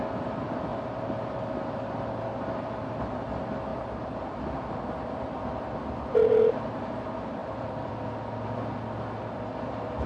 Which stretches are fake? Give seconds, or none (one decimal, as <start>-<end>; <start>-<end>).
3.7-4.4; 7.4-7.9